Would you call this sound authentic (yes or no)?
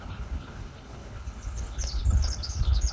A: no